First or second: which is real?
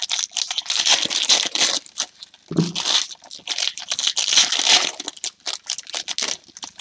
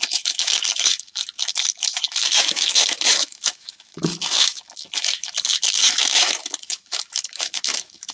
first